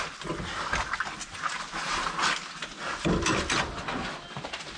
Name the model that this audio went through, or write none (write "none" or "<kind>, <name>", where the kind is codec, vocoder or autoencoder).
none